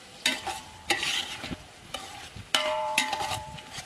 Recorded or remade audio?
remade